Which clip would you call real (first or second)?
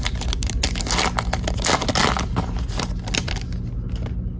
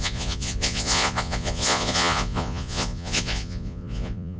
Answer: first